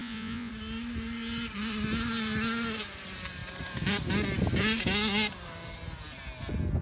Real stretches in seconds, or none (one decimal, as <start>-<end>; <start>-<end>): 0.5-6.8

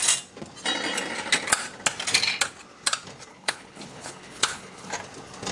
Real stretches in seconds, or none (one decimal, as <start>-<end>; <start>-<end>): 0.0-3.3; 4.9-5.5

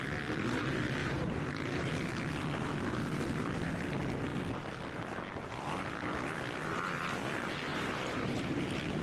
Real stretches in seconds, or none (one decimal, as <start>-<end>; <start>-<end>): 0.0-1.0; 1.9-7.7

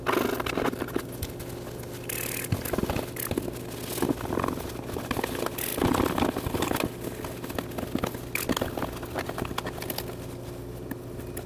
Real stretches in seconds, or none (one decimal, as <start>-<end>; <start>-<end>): 0.0-11.5